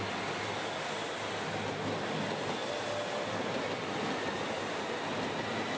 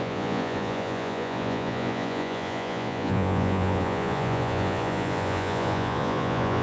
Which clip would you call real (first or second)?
first